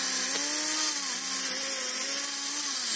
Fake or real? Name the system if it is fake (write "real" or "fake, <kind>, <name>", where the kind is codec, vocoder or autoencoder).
real